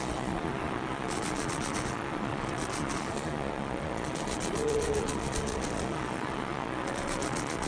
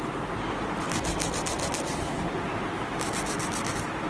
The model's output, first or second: first